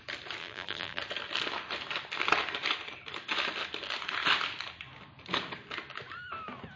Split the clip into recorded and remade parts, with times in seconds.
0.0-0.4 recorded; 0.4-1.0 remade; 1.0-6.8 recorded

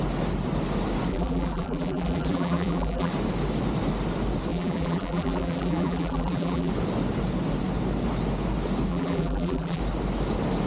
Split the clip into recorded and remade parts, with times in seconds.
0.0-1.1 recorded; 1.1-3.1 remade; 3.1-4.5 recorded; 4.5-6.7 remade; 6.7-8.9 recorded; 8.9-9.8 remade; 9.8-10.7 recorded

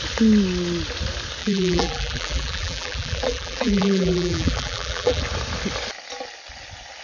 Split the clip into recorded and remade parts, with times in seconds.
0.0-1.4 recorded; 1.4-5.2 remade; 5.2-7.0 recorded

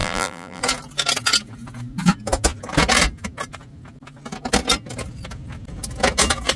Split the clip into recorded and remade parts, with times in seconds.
0.0-0.6 remade; 0.6-6.6 recorded